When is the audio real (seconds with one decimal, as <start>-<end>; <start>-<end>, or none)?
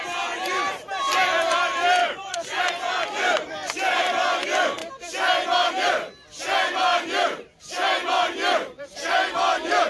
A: 0.0-2.0; 2.6-9.9